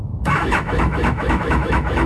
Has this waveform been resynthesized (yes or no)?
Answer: yes